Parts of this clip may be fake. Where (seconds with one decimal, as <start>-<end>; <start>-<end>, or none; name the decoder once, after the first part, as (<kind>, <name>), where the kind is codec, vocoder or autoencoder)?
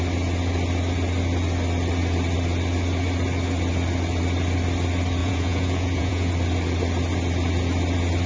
5.2-6.3 (vocoder, Vocos)